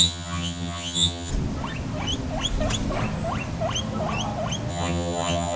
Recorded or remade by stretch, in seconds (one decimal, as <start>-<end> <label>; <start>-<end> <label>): 0.0-1.3 remade; 1.3-4.7 recorded; 4.7-5.6 remade